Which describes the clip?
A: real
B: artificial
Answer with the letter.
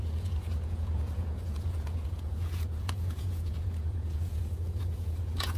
B